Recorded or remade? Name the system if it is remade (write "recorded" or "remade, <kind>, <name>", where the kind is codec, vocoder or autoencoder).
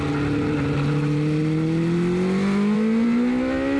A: recorded